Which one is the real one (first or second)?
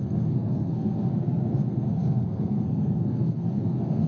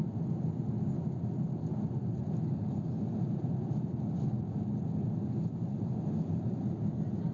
second